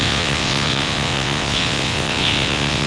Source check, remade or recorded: remade